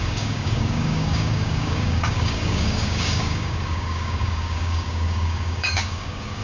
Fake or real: fake